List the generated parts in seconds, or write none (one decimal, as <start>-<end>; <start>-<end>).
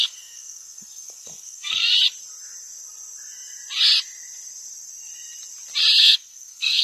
0.0-1.9; 6.0-6.8